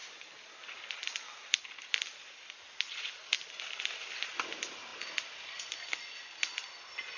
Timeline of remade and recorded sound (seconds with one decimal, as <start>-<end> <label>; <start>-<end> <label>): 0.0-7.2 recorded